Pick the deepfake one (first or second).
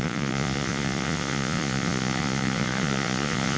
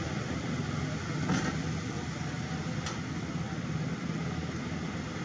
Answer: first